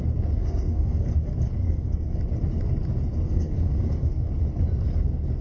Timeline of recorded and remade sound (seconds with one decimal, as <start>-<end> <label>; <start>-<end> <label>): 0.0-0.4 recorded; 0.4-1.1 remade; 1.1-1.6 recorded; 1.6-2.2 remade; 2.2-3.3 recorded; 3.3-4.3 remade; 4.3-5.4 recorded